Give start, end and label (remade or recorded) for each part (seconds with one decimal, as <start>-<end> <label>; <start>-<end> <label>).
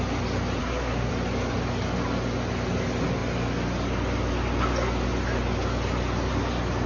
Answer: 0.0-0.6 recorded; 0.6-1.1 remade; 1.1-6.9 recorded